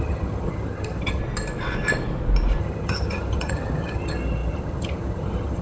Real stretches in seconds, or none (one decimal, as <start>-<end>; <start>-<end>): 1.2-2.6